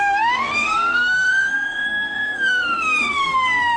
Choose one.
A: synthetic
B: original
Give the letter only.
A